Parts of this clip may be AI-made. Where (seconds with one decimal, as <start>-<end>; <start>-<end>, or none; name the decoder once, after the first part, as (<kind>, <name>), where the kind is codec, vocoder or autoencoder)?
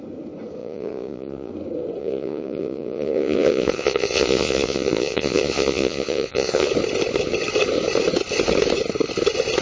0.6-1.5 (vocoder, Vocos); 2.0-6.7